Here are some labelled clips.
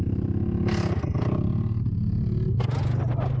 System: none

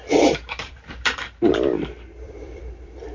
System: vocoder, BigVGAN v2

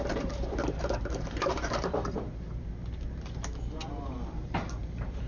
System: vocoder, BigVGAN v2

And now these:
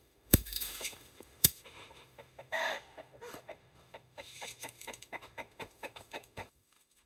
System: autoencoder, DAC-VAE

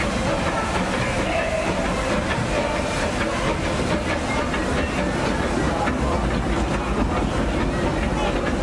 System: none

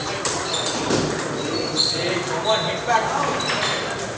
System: none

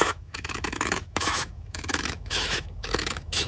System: autoencoder, DAC-VAE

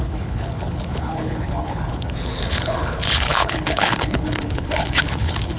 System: codec, HILCodec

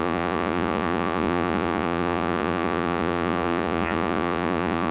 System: vocoder, Vocos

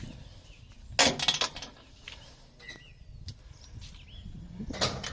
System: none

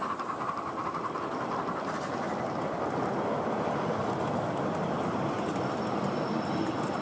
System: none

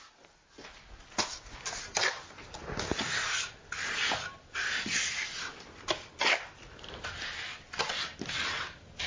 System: none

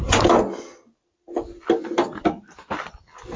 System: none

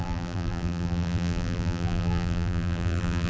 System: vocoder, BigVGAN v2